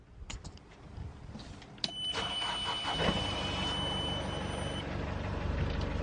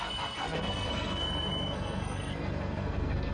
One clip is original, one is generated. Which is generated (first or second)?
second